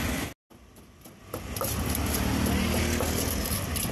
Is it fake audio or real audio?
real